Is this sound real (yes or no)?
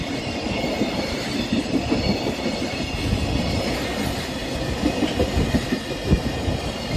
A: yes